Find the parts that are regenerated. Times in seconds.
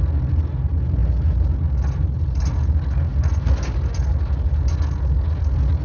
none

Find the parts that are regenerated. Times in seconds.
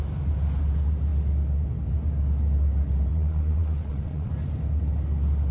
3.1-4.3 (vocoder, WaveNeXt)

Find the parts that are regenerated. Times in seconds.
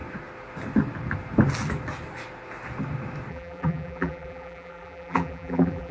3.3-5.9 (vocoder, BigVGAN v2)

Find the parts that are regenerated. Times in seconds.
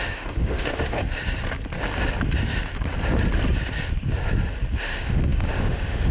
0.0-1.0 (autoencoder, DAC-VAE); 4.7-6.1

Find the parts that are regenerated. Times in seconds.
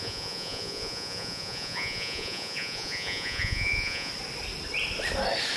0.0-4.1 (vocoder, Vocos)